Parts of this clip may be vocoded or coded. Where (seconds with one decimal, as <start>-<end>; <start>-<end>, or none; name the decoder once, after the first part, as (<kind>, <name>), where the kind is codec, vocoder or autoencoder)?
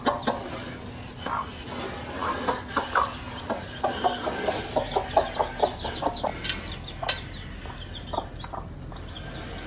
none